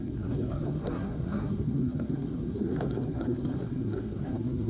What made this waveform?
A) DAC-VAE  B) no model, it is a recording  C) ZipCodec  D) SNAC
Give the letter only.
D